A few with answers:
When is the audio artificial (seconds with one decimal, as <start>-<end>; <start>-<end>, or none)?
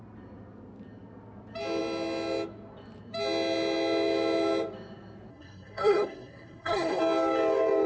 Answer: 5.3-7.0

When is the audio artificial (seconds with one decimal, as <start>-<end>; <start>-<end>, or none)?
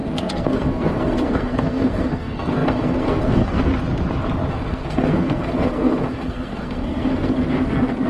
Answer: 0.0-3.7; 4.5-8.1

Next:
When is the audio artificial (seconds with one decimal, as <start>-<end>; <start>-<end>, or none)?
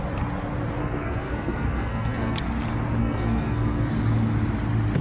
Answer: 0.8-2.4; 3.0-3.9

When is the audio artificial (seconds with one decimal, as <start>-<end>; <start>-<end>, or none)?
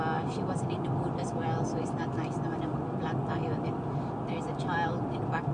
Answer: none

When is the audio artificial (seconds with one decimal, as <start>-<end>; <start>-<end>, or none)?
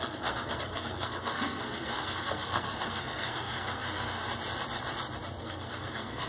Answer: 0.0-4.2; 5.4-6.3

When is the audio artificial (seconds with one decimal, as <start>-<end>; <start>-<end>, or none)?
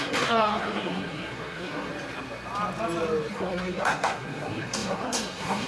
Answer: 0.0-1.9; 3.3-5.7